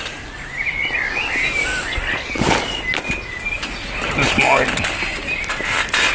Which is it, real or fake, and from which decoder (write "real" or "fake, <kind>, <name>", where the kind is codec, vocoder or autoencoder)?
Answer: real